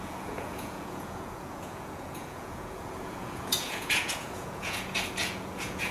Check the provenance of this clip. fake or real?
fake